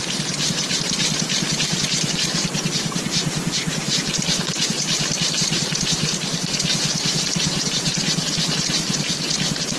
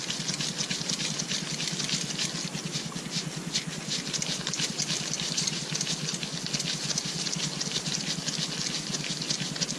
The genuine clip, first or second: second